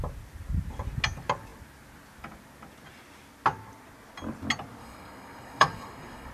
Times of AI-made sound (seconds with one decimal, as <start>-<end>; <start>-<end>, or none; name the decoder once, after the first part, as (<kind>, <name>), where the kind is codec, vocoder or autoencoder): 4.8-6.3 (codec, DAC)